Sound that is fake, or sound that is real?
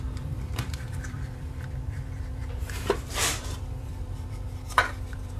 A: fake